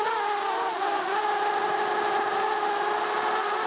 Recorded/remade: recorded